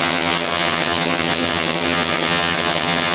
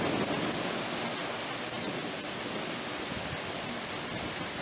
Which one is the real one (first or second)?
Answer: second